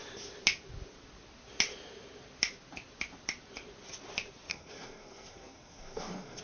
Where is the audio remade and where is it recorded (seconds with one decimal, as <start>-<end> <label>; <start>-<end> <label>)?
0.0-4.5 recorded; 4.5-6.4 remade